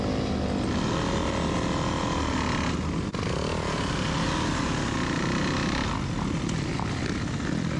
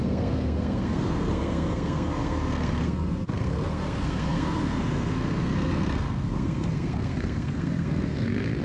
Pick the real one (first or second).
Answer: first